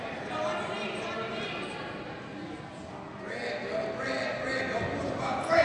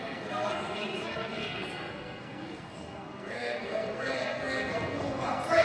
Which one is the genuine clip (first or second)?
first